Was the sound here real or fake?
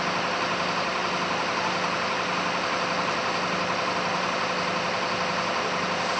real